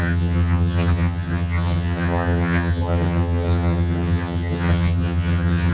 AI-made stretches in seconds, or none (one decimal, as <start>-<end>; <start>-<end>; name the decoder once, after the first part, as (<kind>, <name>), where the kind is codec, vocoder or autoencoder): 0.0-5.7 (vocoder, HiFi-GAN)